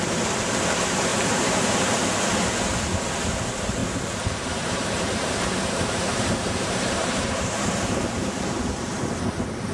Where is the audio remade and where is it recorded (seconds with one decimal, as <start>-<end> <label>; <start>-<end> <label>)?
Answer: 0.0-1.1 recorded; 1.1-1.9 remade; 1.9-3.8 recorded; 3.8-9.0 remade; 9.0-9.7 recorded